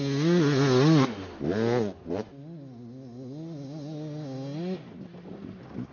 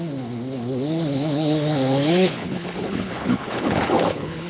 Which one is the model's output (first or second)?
second